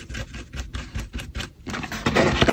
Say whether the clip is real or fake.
fake